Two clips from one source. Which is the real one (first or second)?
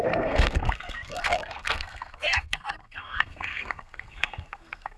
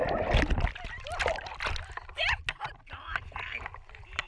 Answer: second